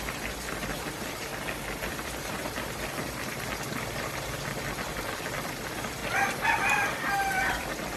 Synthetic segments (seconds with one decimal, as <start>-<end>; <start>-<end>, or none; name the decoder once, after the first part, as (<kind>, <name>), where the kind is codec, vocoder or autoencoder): 0.0-1.3 (vocoder, BigVGAN v2); 1.9-6.0; 7.3-8.0